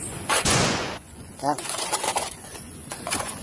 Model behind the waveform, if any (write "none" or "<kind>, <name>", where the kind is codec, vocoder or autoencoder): vocoder, Vocos